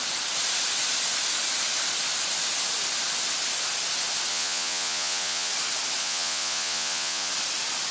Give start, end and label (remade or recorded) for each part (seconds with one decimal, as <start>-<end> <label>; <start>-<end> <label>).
0.0-4.3 recorded; 4.3-5.5 remade; 5.5-6.0 recorded; 6.0-7.3 remade; 7.3-7.9 recorded